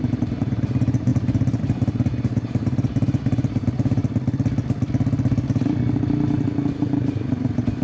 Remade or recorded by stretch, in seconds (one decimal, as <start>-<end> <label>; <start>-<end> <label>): 0.0-4.0 remade; 4.0-6.7 recorded; 6.7-7.8 remade

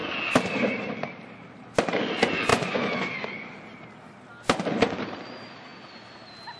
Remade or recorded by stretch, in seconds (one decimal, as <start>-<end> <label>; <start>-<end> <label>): 0.0-2.5 recorded; 2.5-3.5 remade; 3.5-6.6 recorded

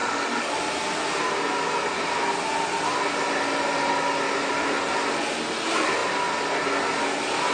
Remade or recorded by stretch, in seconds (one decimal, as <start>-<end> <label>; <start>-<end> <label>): 0.0-0.6 remade; 0.6-7.5 recorded

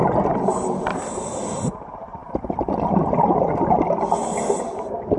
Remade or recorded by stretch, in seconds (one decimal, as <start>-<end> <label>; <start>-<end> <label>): 0.0-5.2 recorded

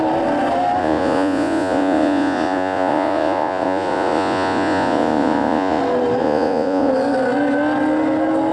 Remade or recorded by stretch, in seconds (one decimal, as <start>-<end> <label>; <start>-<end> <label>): 0.0-0.8 recorded; 0.8-5.8 remade; 5.8-6.2 recorded; 6.2-6.9 remade; 6.9-8.5 recorded

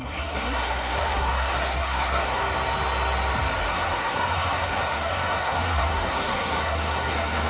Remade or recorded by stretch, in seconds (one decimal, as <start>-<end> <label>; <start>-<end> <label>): 0.0-2.4 remade; 2.4-3.7 recorded; 3.7-7.5 remade

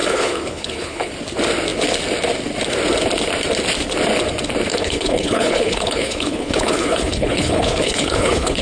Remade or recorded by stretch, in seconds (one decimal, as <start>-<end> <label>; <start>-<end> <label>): 0.0-1.1 remade; 1.1-4.7 recorded; 4.7-8.6 remade

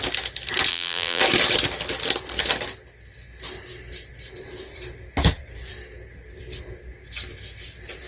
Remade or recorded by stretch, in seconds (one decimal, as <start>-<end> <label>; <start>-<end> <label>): 0.0-0.7 recorded; 0.7-1.2 remade; 1.2-8.1 recorded